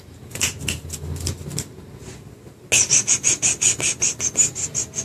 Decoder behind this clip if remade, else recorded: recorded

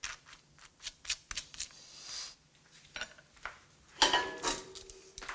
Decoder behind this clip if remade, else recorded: recorded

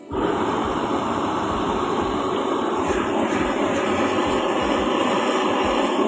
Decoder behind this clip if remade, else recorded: remade, vocoder, BigVGAN v2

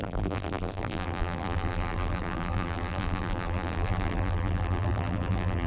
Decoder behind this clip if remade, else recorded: remade, vocoder, BigVGAN v2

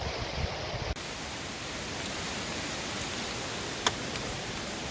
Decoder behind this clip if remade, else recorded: recorded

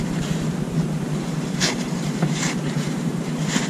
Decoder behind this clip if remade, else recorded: remade, vocoder, BigVGAN v2